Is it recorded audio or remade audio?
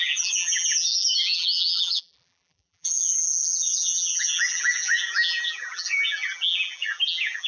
remade